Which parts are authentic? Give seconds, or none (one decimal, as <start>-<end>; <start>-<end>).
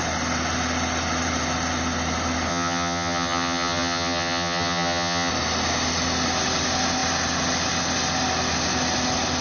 0.0-2.5; 5.3-9.4